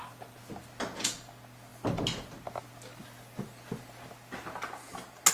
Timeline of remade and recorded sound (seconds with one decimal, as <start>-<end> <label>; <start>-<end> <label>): 0.0-5.3 recorded